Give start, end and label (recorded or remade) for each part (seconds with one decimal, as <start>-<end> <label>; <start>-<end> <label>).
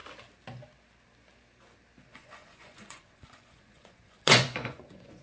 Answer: 0.0-2.1 recorded; 2.1-5.2 remade